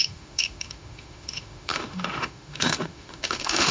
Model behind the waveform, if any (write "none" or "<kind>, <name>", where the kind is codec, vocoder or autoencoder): autoencoder, DAC-VAE